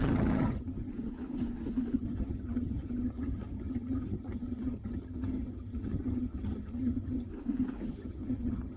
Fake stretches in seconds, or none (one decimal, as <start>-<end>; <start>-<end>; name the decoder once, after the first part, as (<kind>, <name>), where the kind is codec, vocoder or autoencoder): 0.0-0.9 (vocoder, HiFi-GAN); 2.0-7.3; 7.9-8.8